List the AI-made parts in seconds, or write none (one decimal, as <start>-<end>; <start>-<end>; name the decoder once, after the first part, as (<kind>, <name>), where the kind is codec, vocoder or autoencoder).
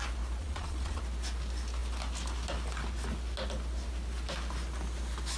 0.4-1.0 (vocoder, Vocos)